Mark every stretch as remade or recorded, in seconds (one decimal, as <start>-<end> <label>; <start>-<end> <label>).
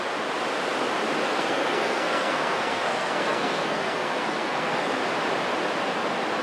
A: 0.0-1.2 recorded; 1.2-5.0 remade; 5.0-6.4 recorded